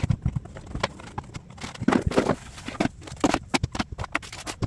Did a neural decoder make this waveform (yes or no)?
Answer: no